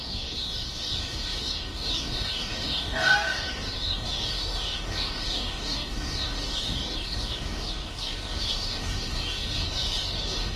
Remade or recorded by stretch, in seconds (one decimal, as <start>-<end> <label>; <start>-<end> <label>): 0.0-10.6 remade